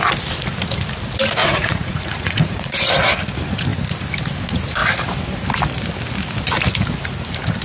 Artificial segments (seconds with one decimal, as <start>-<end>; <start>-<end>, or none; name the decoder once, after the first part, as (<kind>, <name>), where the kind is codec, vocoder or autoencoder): 1.4-2.8 (vocoder, Vocos)